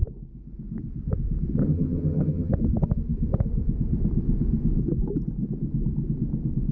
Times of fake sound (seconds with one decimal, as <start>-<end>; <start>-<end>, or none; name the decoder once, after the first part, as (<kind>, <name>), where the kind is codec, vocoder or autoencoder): 1.6-2.5 (vocoder, HiFi-GAN)

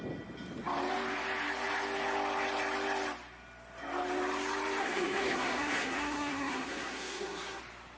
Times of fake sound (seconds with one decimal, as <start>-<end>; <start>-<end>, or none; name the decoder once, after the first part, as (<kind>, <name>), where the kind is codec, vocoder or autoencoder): 4.8-7.6 (codec, SNAC)

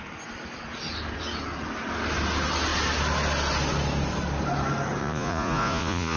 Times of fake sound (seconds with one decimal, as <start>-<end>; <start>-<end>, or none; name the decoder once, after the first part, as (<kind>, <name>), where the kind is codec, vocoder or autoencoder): 5.0-6.2 (vocoder, Vocos)

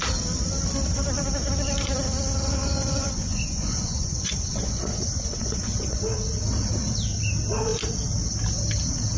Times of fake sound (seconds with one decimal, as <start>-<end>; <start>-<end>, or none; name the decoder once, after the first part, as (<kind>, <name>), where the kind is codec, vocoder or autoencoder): 2.4-6.0 (vocoder, Vocos)

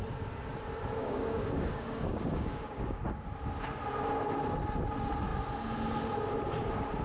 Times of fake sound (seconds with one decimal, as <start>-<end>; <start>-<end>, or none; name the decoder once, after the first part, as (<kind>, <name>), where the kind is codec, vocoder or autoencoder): 1.0-3.0 (codec, DAC)